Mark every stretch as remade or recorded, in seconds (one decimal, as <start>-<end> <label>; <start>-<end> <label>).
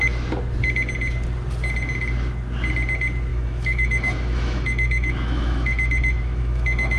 0.0-3.3 recorded; 3.3-7.0 remade